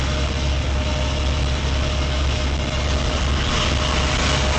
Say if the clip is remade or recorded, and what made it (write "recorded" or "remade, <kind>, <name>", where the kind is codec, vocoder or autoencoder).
recorded